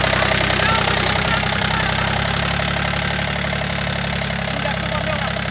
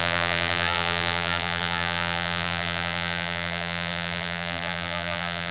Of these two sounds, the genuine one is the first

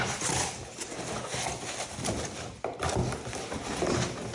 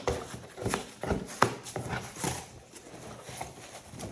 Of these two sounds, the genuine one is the first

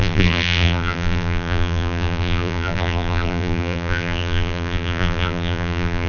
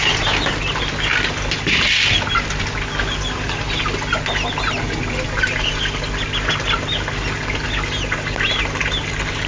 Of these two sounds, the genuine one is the second